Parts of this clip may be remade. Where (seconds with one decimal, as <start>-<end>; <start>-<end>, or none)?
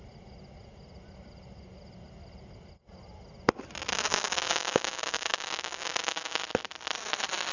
4.1-6.4